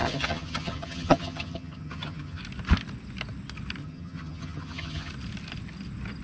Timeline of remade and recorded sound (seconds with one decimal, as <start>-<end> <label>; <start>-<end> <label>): 0.0-2.4 remade; 2.4-3.8 recorded; 3.8-5.1 remade; 5.1-6.2 recorded